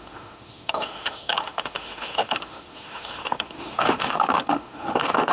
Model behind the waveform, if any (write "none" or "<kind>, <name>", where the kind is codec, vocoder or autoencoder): autoencoder, DAC-VAE